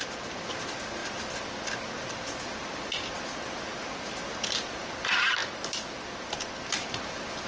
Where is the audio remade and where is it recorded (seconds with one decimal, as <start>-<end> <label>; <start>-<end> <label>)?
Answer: 0.0-7.5 recorded